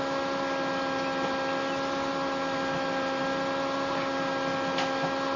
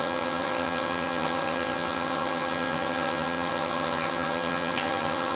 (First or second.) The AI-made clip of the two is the second